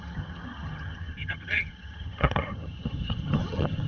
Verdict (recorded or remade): remade